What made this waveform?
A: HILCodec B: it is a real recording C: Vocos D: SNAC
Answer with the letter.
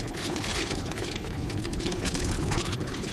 A